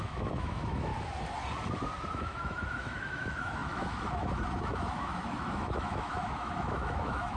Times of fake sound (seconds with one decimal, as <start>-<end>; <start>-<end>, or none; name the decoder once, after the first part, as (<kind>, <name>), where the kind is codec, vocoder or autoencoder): 0.0-0.9 (autoencoder, DAC-VAE); 2.1-7.4